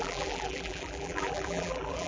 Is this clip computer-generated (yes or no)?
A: yes